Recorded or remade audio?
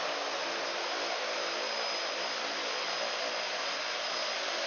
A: recorded